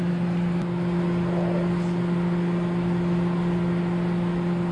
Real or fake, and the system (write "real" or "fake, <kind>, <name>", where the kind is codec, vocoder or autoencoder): real